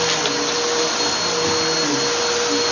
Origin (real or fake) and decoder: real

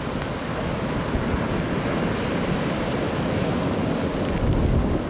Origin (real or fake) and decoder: real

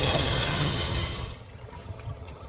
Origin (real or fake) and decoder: fake, vocoder, HiFi-GAN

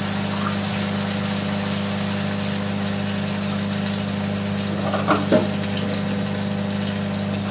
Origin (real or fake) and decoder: real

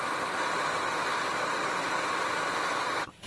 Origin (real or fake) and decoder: fake, vocoder, BigVGAN v2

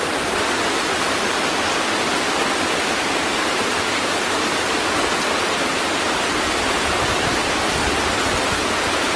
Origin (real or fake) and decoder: real